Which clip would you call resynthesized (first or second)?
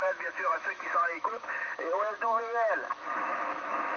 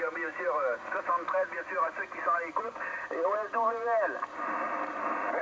first